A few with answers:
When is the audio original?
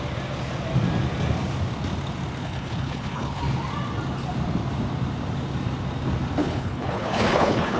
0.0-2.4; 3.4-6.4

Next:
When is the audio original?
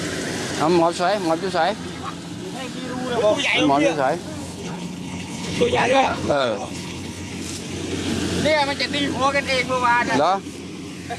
0.0-4.4; 7.3-11.2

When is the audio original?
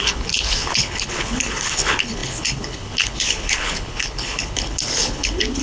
none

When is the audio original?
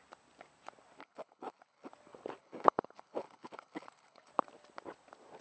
0.0-1.0; 1.9-2.4; 4.3-5.4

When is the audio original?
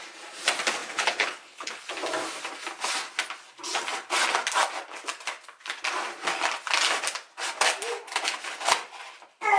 0.0-0.8; 1.9-9.6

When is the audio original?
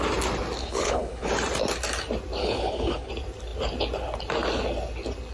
0.0-0.6; 1.3-2.4; 3.1-5.3